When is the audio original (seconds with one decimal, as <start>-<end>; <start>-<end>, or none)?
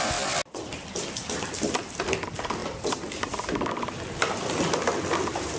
0.0-5.6